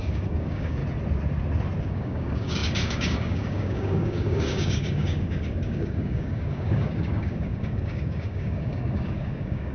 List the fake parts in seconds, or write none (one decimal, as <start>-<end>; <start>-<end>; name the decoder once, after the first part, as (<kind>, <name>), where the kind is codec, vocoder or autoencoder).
0.0-0.8 (codec, DAC); 1.8-9.7